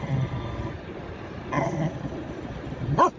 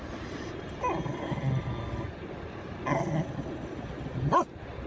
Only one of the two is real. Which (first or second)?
second